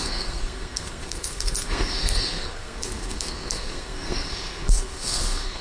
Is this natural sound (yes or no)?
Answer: no